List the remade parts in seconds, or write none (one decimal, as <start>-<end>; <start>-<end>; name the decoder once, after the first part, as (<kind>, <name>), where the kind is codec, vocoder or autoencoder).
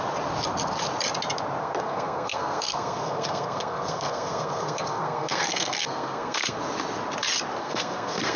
1.6-6.6 (codec, SNAC); 7.6-8.4